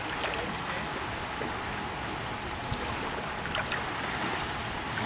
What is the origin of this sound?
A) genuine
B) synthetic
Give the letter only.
A